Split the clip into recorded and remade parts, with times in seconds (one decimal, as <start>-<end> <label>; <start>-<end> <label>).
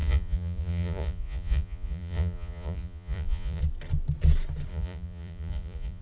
0.0-3.6 remade; 3.6-4.7 recorded; 4.7-6.0 remade